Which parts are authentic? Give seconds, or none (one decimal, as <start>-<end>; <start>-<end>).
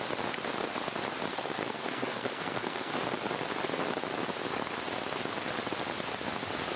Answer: 0.0-1.3; 2.9-6.8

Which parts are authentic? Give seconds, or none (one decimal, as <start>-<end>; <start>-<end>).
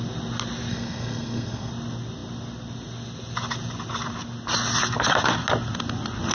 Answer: 0.0-0.7; 1.7-6.3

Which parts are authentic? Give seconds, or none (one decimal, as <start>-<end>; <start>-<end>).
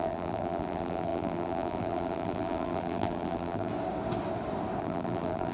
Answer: 3.7-4.8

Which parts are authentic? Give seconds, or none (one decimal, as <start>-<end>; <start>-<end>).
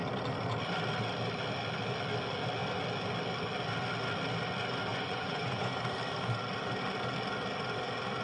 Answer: 0.0-4.9; 5.8-8.2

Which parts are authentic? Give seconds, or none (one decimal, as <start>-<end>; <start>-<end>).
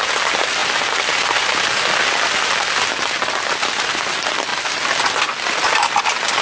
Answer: 0.0-6.4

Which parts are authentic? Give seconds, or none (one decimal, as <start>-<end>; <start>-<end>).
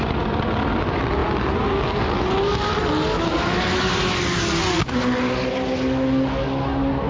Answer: 0.0-7.1